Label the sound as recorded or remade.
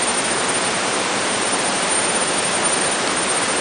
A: remade